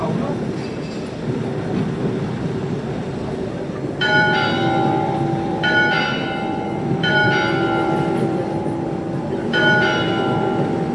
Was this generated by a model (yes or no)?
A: yes